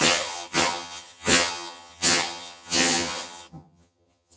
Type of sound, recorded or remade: remade